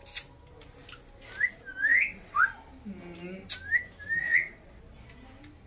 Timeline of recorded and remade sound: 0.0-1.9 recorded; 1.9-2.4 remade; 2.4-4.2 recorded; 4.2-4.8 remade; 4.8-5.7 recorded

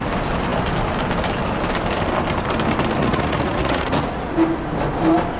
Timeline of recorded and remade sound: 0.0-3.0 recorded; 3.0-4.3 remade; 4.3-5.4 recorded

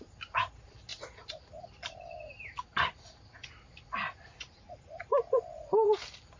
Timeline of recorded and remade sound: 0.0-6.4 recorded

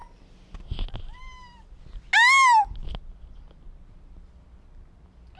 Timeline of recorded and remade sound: 0.0-5.4 recorded

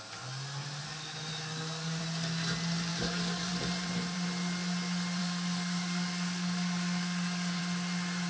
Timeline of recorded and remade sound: 0.0-0.8 recorded; 0.8-2.0 remade; 2.0-2.9 recorded; 2.9-3.5 remade; 3.5-5.2 recorded; 5.2-7.6 remade; 7.6-8.3 recorded